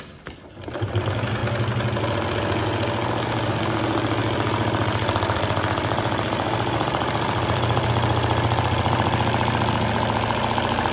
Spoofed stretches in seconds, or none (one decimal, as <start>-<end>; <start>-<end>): 4.2-7.9